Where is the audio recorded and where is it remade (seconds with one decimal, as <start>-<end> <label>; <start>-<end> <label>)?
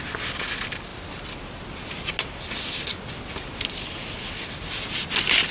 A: 0.0-5.5 recorded